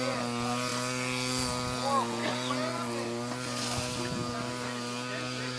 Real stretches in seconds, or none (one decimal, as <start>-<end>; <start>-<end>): 0.0-5.6